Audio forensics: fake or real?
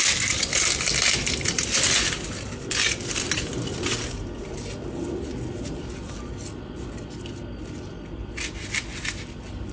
real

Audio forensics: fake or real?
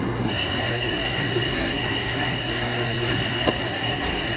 fake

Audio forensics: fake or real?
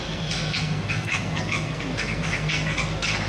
fake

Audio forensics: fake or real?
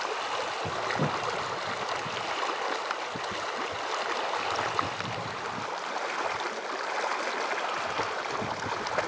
real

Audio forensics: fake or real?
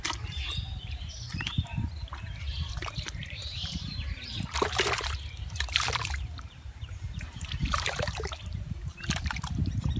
fake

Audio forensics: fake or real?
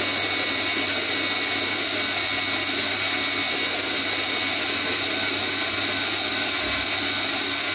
real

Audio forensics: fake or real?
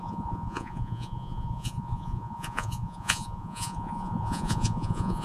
fake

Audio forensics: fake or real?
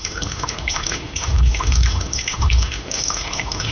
fake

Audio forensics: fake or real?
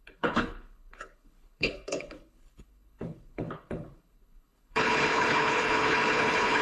fake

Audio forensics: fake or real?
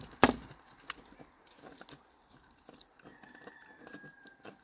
real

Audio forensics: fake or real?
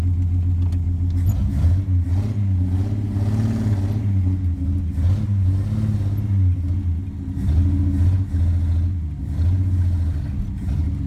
real